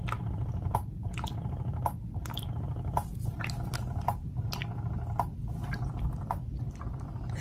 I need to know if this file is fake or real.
real